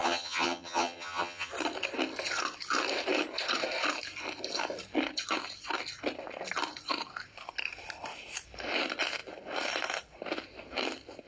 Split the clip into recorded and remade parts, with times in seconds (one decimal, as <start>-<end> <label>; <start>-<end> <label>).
0.0-1.5 remade; 1.5-11.3 recorded